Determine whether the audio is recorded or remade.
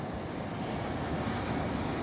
recorded